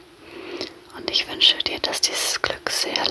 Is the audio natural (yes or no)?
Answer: yes